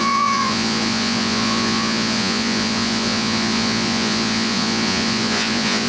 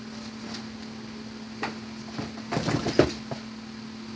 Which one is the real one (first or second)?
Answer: second